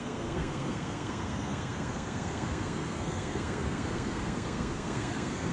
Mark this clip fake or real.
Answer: fake